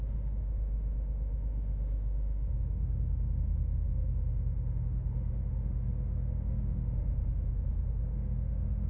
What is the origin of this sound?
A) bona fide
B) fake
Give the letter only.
B